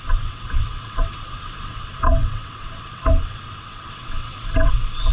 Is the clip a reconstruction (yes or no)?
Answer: yes